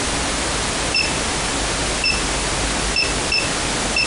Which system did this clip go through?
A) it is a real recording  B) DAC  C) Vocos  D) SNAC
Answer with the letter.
A